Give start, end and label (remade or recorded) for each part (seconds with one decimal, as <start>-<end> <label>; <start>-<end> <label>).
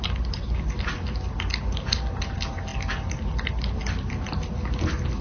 0.0-5.2 recorded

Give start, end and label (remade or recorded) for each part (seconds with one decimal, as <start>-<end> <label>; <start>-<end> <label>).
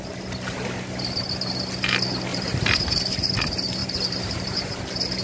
0.0-2.3 recorded; 2.3-3.0 remade; 3.0-3.8 recorded; 3.8-4.8 remade; 4.8-5.2 recorded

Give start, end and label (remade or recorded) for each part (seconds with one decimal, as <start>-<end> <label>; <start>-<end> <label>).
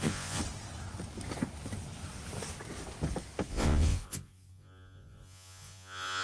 0.0-0.4 remade; 0.4-3.5 recorded; 3.5-6.2 remade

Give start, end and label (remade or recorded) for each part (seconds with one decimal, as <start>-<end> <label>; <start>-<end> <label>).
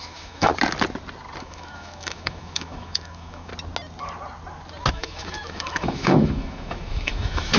0.0-0.5 remade; 0.5-1.4 recorded; 1.4-3.5 remade; 3.5-4.9 recorded; 4.9-7.6 remade